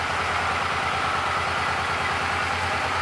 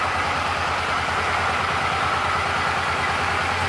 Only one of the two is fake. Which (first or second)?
second